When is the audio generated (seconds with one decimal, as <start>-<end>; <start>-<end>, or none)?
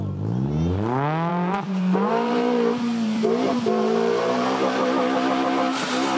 1.3-4.8